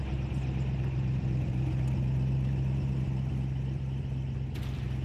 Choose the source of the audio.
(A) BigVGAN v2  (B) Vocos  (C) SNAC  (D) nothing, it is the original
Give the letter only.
D